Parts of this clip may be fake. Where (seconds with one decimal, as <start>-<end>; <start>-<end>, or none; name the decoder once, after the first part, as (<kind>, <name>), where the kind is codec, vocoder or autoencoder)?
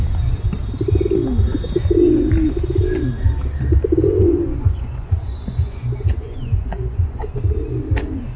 4.0-7.4 (vocoder, Vocos)